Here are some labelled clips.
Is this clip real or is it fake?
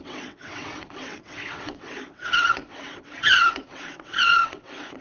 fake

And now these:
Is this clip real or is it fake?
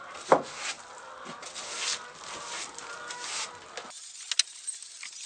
real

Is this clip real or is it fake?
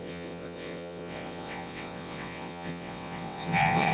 fake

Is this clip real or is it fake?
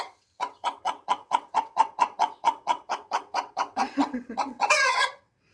fake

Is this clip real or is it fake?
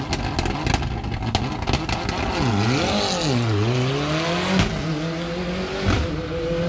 real